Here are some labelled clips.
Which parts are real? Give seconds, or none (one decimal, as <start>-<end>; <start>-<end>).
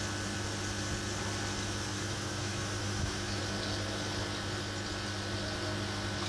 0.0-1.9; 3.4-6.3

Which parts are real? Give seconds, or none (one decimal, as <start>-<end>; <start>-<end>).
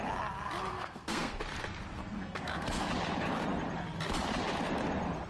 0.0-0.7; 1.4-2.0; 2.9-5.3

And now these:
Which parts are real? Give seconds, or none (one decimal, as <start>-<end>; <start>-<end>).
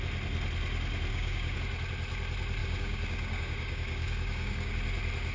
0.0-1.1; 1.6-2.6; 4.7-5.3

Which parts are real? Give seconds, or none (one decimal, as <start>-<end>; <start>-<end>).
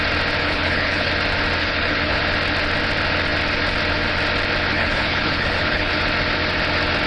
0.0-0.4; 1.1-1.6; 2.2-4.7; 6.0-7.1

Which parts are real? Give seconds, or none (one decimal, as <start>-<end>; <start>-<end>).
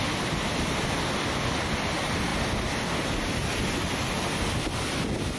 0.0-5.4